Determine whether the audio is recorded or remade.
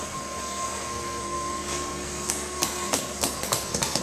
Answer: remade